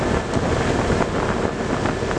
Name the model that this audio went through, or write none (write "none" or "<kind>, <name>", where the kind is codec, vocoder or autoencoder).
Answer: none